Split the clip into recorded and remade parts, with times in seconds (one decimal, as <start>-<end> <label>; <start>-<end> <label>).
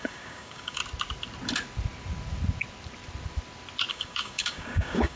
0.0-0.8 remade; 0.8-3.9 recorded; 3.9-5.2 remade